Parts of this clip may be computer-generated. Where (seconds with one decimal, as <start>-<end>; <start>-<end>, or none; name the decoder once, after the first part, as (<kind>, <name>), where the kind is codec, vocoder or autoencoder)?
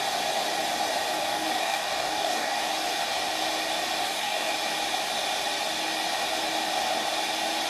1.1-2.6 (codec, DAC); 4.0-4.5